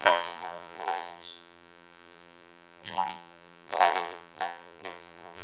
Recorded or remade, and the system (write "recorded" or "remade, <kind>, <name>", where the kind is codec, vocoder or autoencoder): remade, vocoder, BigVGAN v2